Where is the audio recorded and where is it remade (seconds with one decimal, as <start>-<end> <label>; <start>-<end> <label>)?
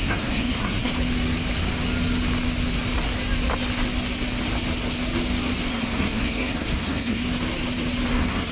0.0-0.9 remade; 0.9-5.7 recorded; 5.7-7.2 remade; 7.2-8.1 recorded; 8.1-8.5 remade